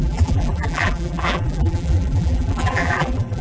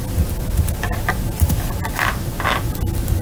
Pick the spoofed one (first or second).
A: first